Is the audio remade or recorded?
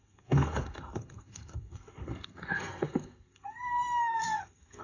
remade